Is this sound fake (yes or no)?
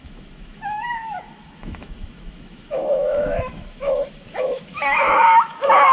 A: yes